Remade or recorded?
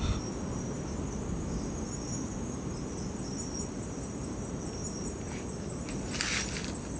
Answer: recorded